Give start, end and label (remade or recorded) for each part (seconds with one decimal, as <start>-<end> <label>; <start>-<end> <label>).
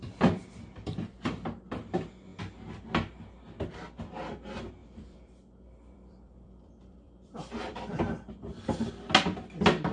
0.0-0.4 recorded; 0.4-1.5 remade; 1.5-4.8 recorded; 4.8-8.9 remade; 8.9-9.9 recorded